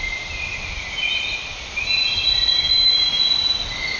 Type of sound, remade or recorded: recorded